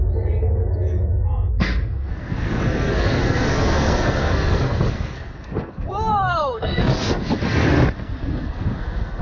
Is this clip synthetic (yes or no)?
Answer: yes